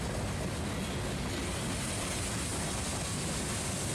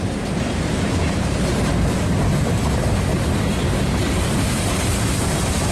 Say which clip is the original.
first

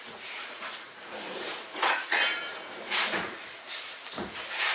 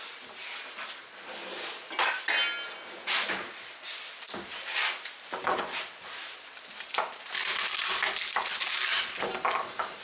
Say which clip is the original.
second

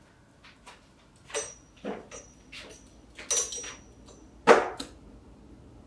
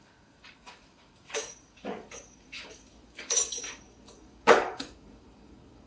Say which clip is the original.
first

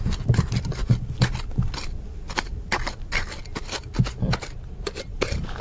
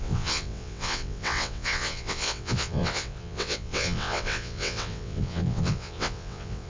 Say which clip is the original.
first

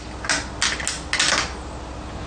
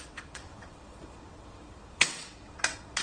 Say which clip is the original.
first